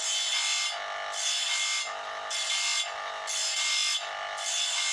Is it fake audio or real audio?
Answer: real